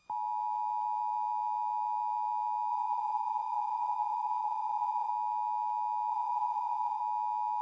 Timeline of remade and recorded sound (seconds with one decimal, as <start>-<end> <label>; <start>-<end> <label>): 0.0-2.7 recorded; 2.7-5.1 remade; 5.1-6.1 recorded; 6.1-7.0 remade; 7.0-7.6 recorded